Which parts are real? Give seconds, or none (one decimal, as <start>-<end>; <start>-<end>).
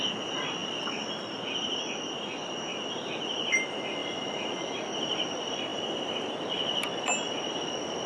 0.0-8.1